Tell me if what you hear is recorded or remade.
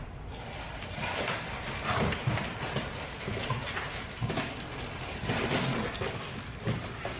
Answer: recorded